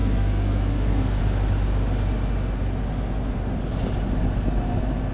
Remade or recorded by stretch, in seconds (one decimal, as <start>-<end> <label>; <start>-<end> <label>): 0.0-1.2 remade; 1.2-5.1 recorded